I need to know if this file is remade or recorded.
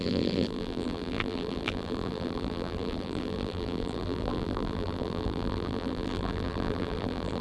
remade